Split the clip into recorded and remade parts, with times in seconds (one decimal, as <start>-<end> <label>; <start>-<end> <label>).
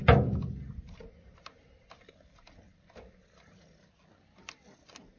0.0-5.2 recorded